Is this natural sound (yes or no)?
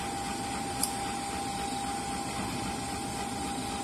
yes